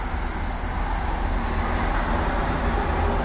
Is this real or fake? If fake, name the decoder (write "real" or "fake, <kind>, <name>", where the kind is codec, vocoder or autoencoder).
real